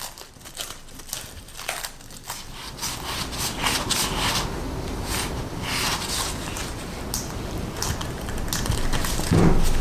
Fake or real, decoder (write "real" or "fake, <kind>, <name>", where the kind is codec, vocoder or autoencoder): real